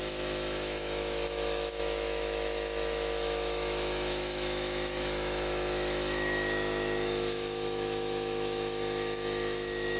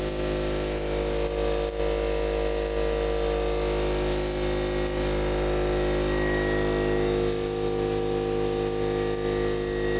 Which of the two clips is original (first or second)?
second